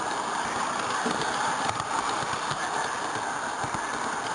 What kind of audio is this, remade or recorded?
recorded